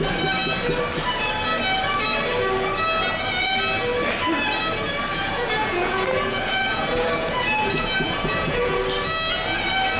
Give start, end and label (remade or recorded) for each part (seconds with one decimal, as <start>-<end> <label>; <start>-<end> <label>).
0.0-5.1 recorded; 5.1-8.8 remade; 8.8-10.0 recorded